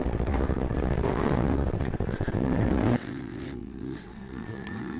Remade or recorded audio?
remade